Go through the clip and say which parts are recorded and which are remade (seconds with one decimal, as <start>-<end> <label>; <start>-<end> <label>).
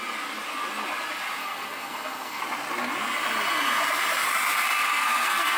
0.0-1.4 recorded; 1.4-2.4 remade; 2.4-4.8 recorded; 4.8-5.6 remade